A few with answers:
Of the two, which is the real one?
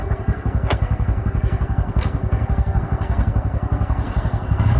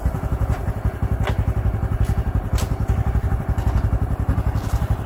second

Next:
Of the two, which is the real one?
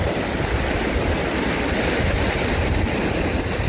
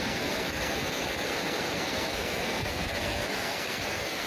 first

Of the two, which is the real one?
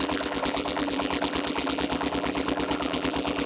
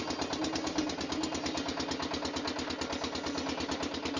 second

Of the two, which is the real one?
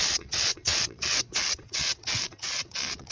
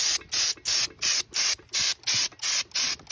second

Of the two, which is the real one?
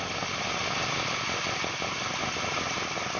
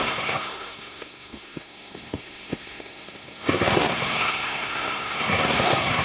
first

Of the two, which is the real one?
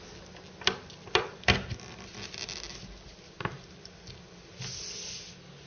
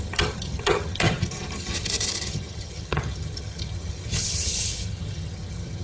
first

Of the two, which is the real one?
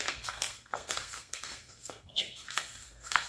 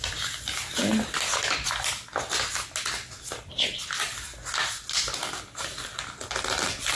second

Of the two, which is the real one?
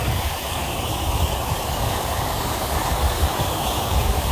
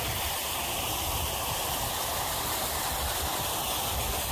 second